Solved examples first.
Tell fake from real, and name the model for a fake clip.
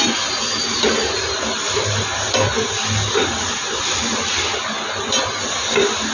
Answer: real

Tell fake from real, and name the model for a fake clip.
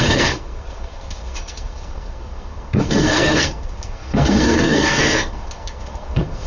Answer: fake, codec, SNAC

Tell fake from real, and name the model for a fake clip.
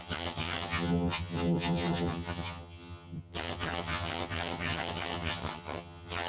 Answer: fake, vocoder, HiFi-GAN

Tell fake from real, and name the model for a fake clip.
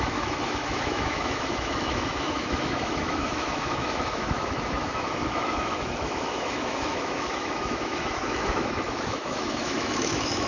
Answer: fake, autoencoder, DAC-VAE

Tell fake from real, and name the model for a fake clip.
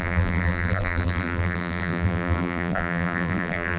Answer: fake, vocoder, BigVGAN v2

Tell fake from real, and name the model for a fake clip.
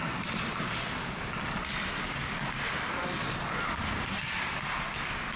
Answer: real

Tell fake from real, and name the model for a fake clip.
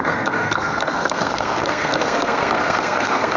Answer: fake, codec, SNAC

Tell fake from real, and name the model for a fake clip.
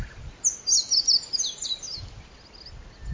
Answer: real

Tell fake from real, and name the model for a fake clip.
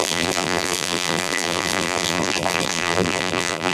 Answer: fake, vocoder, BigVGAN v2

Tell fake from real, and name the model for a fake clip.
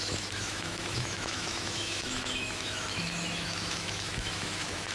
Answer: fake, autoencoder, DAC-VAE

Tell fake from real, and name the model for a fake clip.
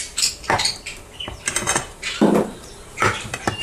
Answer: real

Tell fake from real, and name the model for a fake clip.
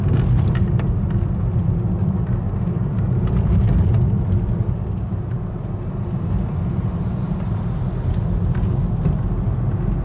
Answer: real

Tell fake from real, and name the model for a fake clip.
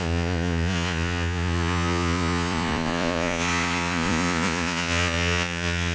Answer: fake, vocoder, Vocos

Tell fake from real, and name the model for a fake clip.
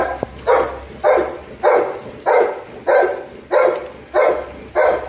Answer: real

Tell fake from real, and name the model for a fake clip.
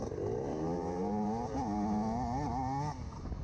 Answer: real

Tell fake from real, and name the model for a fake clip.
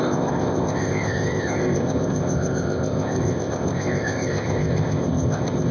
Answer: fake, codec, ZipCodec